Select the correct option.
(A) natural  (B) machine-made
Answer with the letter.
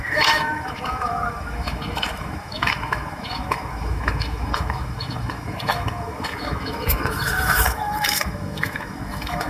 B